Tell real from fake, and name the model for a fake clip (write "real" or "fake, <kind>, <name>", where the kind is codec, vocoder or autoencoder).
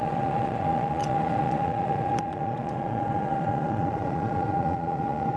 fake, vocoder, Vocos